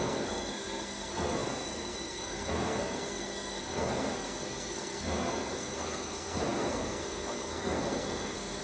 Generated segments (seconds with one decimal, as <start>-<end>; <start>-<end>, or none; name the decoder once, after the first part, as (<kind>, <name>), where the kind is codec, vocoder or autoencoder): 0.0-8.6 (codec, SNAC)